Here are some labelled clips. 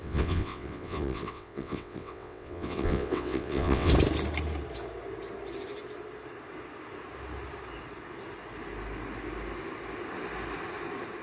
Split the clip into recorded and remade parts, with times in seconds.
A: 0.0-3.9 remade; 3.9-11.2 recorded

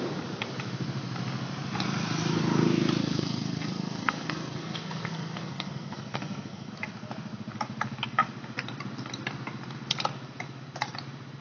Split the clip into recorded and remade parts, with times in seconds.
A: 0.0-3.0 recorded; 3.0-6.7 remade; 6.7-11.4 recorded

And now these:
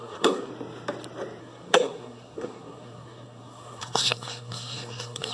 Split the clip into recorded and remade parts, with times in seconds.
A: 0.0-0.5 remade; 0.5-1.4 recorded; 1.4-5.3 remade

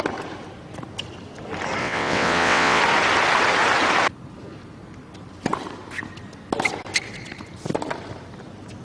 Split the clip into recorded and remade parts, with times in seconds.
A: 0.0-1.8 recorded; 1.8-2.8 remade; 2.8-8.8 recorded

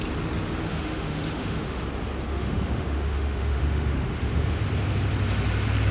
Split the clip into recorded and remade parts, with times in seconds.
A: 0.0-0.7 recorded; 0.7-1.8 remade; 1.8-2.3 recorded; 2.3-4.6 remade; 4.6-5.9 recorded

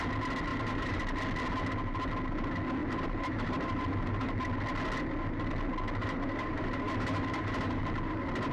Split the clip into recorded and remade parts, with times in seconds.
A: 0.0-0.5 recorded; 0.5-1.0 remade; 1.0-2.8 recorded; 2.8-4.3 remade; 4.3-6.0 recorded; 6.0-7.8 remade; 7.8-8.5 recorded